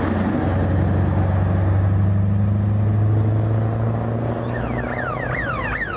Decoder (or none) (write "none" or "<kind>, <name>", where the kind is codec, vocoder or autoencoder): none